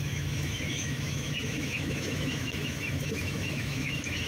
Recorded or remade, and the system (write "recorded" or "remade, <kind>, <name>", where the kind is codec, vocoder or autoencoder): remade, autoencoder, DAC-VAE